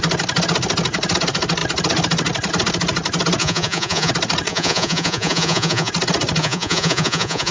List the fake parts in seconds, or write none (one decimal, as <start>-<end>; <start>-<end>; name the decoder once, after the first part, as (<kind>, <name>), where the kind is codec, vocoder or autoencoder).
3.4-4.1 (vocoder, Vocos); 4.5-5.9; 6.4-7.5